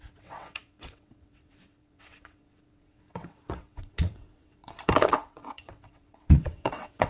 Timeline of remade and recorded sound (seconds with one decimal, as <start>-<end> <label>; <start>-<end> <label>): 0.0-7.1 remade